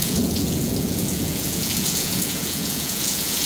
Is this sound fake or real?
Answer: fake